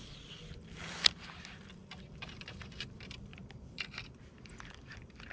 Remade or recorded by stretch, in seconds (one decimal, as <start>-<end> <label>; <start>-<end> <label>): 0.0-5.3 remade